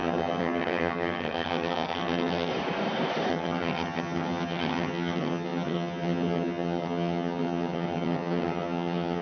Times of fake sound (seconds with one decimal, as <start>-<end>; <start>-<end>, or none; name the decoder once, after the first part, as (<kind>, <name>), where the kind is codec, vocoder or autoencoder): 0.0-2.5 (vocoder, HiFi-GAN); 3.3-9.2